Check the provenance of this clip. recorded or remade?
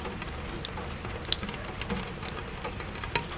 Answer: recorded